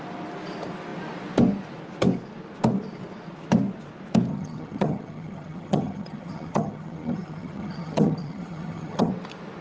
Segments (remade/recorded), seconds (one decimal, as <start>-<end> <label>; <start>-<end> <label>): 0.0-4.3 recorded; 4.3-9.1 remade; 9.1-9.6 recorded